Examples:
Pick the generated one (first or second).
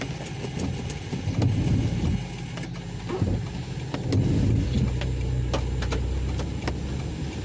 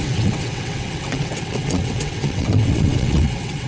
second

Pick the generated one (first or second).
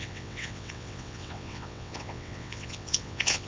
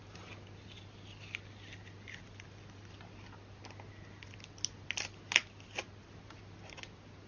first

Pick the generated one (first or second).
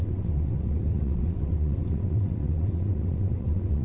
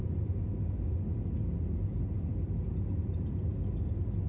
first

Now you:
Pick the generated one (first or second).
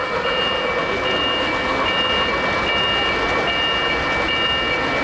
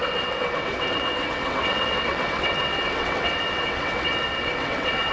second